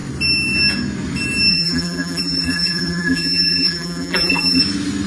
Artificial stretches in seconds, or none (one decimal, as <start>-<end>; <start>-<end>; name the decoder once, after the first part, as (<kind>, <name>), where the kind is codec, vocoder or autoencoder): 1.5-4.6 (vocoder, BigVGAN v2)